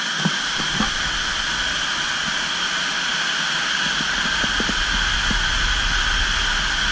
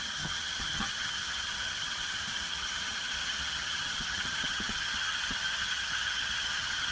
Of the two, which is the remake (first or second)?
second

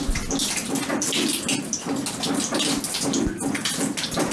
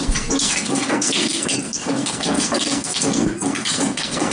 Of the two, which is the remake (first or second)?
second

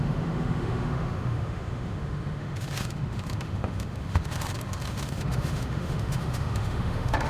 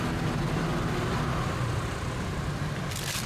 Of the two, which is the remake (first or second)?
first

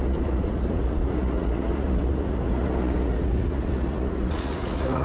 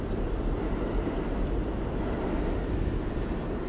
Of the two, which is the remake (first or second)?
first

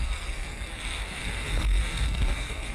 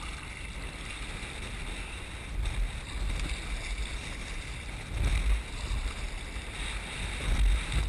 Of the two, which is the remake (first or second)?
first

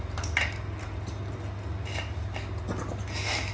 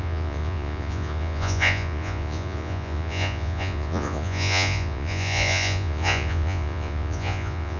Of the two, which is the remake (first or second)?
second